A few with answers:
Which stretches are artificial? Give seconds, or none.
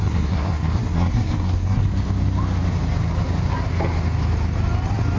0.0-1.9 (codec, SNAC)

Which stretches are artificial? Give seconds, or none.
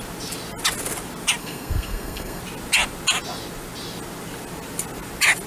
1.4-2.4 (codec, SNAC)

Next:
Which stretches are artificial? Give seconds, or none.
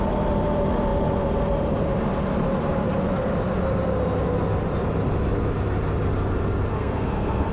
6.8-7.5 (codec, SNAC)